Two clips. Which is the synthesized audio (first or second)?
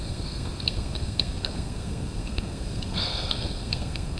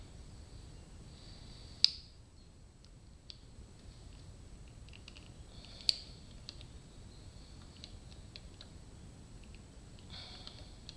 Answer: first